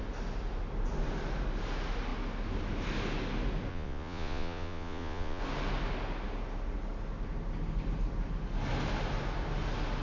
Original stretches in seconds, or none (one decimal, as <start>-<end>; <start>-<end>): 0.0-3.7; 5.4-10.0